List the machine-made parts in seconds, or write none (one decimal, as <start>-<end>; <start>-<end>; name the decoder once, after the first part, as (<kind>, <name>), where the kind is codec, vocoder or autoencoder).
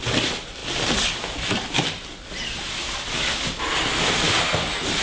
none